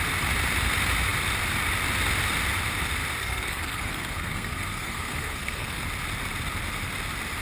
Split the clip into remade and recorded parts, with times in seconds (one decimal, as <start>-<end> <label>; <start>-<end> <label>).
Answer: 0.0-3.2 recorded; 3.2-5.8 remade; 5.8-7.4 recorded